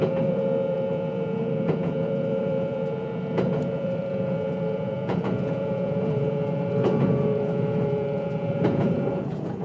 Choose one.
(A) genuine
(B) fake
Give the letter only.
B